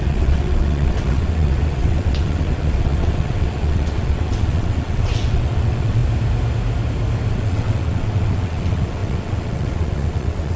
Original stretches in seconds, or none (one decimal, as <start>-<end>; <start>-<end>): 6.0-7.3